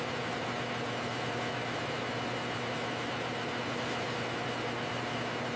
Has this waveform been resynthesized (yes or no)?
no